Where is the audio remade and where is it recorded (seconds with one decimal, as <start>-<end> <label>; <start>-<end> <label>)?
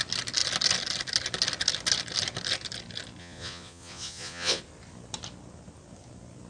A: 0.0-3.2 recorded; 3.2-4.6 remade; 4.6-6.5 recorded